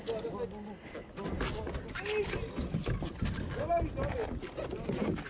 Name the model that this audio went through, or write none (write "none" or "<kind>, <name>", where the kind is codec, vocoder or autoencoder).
none